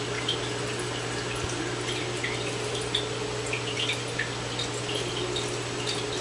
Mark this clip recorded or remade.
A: recorded